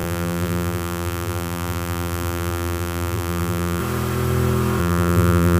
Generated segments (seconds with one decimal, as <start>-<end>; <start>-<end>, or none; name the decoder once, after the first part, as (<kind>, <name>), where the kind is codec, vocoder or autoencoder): 0.0-3.8 (vocoder, BigVGAN v2); 4.8-5.6